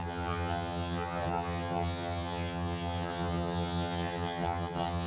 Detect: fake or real fake